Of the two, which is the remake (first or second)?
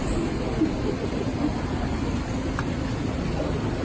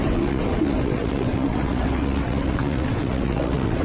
second